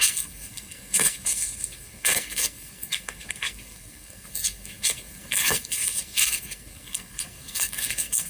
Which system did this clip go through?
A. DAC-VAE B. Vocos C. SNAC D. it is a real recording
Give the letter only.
C